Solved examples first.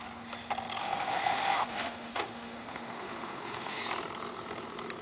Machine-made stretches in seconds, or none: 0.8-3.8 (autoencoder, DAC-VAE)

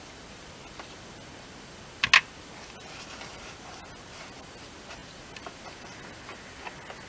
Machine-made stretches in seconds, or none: none

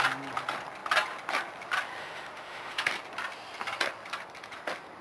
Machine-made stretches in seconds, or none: 2.0-2.9 (autoencoder, DAC-VAE)

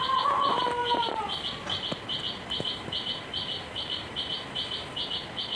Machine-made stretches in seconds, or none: 0.8-1.8 (vocoder, BigVGAN v2); 3.4-4.2

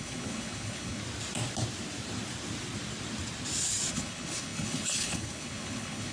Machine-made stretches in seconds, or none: 0.0-1.0 (codec, HILCodec); 3.9-6.1

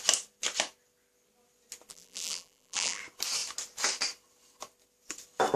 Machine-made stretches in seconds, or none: 1.9-3.0 (vocoder, BigVGAN v2)

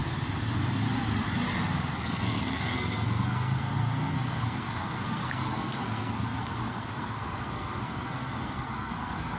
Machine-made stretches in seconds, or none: 1.9-9.4 (codec, SNAC)

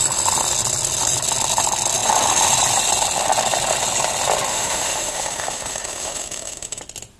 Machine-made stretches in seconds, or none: 4.5-6.8 (autoencoder, DAC-VAE)